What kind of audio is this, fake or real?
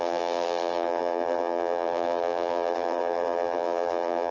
fake